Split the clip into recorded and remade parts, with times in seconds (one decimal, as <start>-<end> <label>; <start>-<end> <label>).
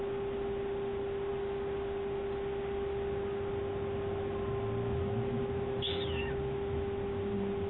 0.0-7.7 recorded